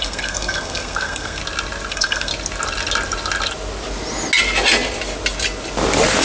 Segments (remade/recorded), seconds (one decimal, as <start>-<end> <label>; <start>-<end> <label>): 0.0-1.4 remade; 1.4-1.9 recorded; 1.9-2.3 remade; 2.3-6.2 recorded